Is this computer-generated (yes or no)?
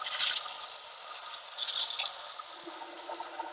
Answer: no